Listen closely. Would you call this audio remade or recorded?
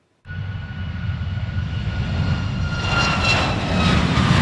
recorded